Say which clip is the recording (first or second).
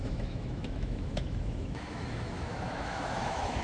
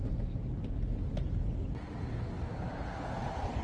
second